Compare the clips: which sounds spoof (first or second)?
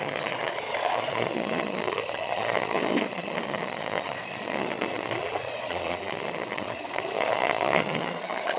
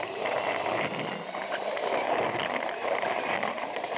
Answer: first